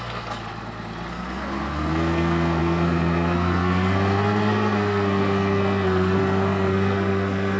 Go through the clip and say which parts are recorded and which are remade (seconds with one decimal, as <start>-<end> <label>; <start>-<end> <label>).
0.0-0.4 remade; 0.4-1.1 recorded; 1.1-7.6 remade